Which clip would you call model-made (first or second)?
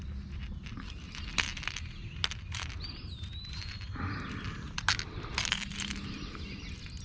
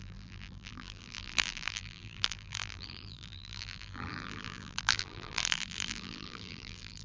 second